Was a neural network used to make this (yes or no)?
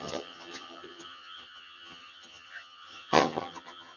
yes